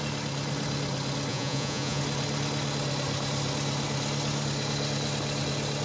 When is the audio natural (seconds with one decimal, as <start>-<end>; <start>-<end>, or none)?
0.0-1.3; 2.0-5.8